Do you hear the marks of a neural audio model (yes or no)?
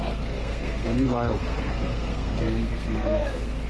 yes